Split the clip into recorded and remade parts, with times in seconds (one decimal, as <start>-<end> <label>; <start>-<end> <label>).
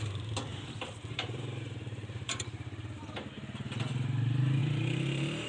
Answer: 0.0-0.5 recorded; 0.5-3.8 remade; 3.8-4.6 recorded; 4.6-5.5 remade